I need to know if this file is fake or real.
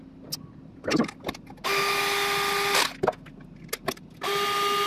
real